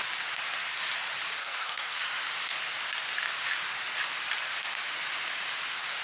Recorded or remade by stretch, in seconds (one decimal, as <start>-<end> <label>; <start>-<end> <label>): 0.0-1.4 recorded; 1.4-2.0 remade; 2.0-6.0 recorded